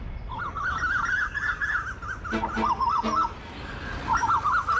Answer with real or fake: real